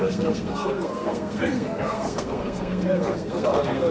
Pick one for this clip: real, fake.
fake